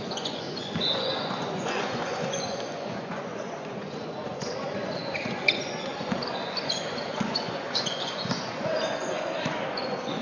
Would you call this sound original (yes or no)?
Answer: no